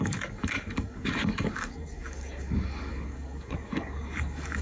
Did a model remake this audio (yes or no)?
yes